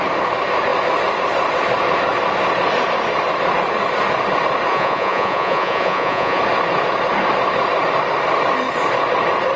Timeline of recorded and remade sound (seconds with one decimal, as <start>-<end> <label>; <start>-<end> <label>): 0.0-4.7 recorded; 4.7-6.4 remade; 6.4-9.6 recorded